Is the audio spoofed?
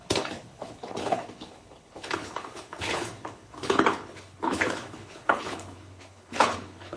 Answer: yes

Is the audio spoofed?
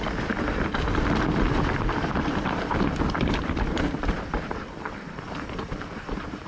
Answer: yes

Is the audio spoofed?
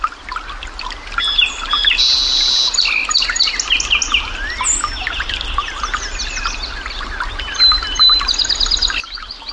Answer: no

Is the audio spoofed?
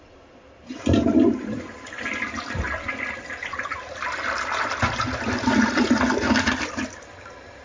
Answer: no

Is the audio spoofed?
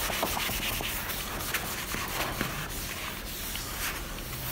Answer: no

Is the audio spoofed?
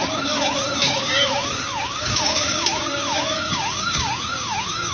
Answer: yes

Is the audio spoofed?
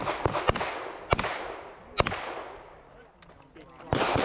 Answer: no